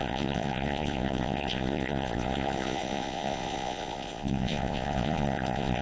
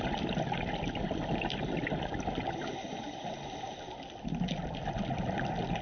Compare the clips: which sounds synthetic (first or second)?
first